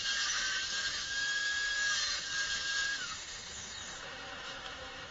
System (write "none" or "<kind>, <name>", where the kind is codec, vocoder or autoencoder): autoencoder, DAC-VAE